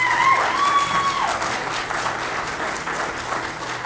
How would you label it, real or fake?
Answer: real